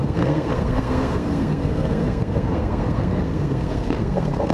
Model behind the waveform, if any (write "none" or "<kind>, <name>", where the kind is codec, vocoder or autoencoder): codec, SNAC